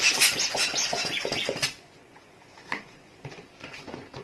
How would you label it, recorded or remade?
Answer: remade